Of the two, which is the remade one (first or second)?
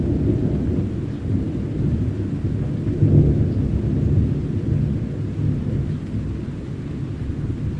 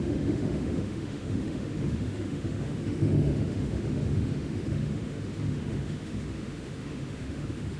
second